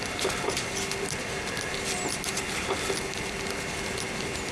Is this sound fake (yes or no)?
no